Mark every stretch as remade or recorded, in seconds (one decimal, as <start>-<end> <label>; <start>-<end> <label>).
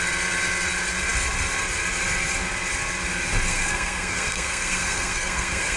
0.0-3.5 recorded; 3.5-5.8 remade